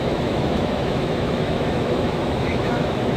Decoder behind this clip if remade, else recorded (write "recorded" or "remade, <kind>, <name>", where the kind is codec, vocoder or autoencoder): remade, autoencoder, DAC-VAE